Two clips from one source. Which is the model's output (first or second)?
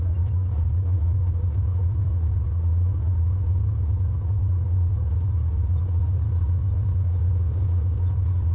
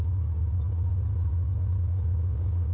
first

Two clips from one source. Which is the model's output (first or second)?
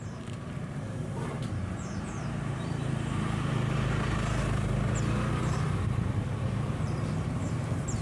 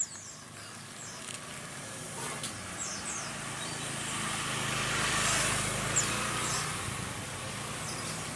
first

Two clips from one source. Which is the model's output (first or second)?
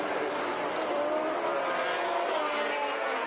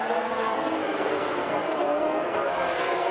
second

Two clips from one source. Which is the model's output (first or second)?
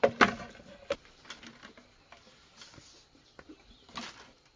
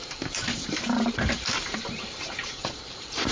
second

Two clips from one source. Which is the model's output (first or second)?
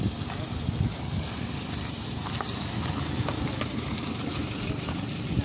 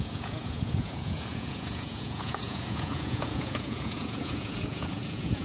second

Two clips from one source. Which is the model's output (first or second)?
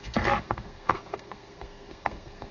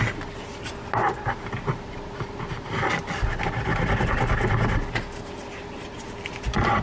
first